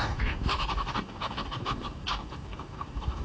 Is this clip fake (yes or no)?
yes